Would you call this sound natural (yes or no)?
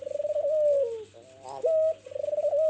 yes